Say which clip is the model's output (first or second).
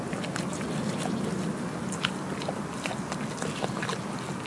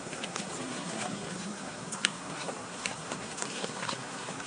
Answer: second